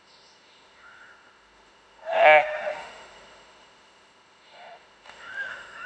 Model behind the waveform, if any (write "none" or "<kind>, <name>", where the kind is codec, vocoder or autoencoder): autoencoder, DAC-VAE